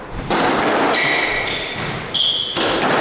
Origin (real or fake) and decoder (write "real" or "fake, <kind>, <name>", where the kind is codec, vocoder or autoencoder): real